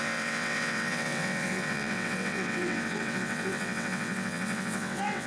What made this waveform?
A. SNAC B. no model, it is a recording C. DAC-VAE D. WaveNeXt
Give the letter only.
D